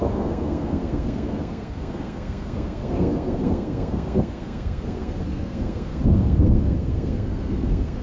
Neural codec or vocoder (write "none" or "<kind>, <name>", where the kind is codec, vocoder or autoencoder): codec, SNAC